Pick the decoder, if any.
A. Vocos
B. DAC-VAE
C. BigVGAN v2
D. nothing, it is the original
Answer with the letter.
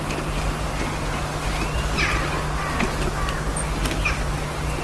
D